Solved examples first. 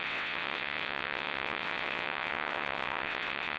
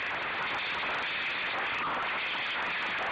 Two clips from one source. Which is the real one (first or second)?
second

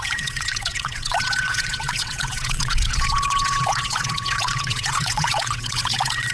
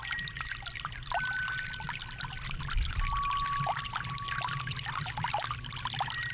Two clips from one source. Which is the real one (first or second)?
second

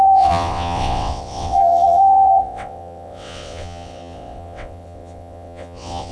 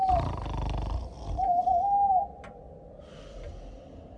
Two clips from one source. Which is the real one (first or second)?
second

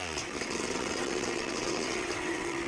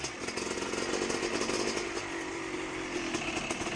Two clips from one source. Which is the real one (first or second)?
second